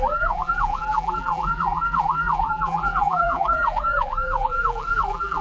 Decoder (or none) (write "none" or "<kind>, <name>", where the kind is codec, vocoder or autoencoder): vocoder, BigVGAN v2